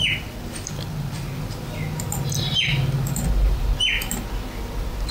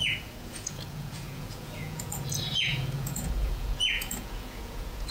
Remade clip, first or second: second